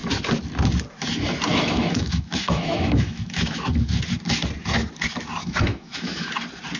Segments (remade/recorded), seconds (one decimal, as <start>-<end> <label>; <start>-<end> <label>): 0.0-1.5 recorded; 1.5-3.6 remade; 3.6-5.4 recorded; 5.4-6.3 remade; 6.3-6.8 recorded